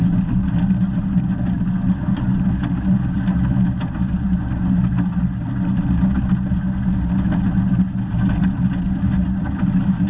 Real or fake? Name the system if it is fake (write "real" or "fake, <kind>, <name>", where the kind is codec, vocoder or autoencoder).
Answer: real